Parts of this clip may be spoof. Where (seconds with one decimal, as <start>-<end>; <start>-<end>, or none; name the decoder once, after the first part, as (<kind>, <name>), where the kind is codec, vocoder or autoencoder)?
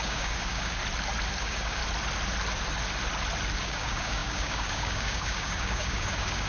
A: 0.0-0.8 (codec, DAC); 1.4-1.8; 3.6-6.5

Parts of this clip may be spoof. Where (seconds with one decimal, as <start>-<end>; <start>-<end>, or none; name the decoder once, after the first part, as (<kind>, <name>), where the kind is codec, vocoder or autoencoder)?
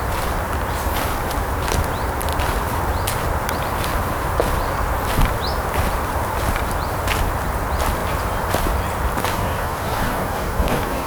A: 9.2-11.1 (codec, DAC)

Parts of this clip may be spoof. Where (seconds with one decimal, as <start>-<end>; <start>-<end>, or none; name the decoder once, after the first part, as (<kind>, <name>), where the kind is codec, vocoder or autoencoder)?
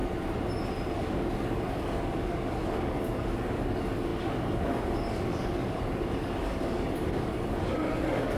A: 1.0-8.4 (codec, DAC)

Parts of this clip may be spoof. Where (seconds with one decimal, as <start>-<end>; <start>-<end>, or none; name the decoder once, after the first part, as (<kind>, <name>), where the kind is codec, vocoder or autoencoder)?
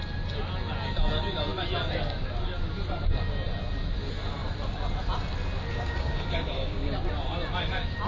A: 5.7-6.9 (codec, DAC)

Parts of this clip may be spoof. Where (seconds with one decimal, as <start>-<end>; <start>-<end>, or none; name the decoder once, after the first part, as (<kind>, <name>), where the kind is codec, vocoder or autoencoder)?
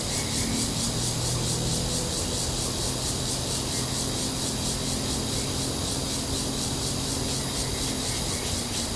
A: none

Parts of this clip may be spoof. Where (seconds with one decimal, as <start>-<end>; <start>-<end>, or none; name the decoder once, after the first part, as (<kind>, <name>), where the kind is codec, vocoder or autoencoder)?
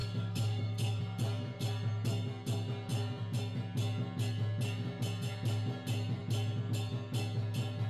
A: 0.0-1.0 (codec, DAC)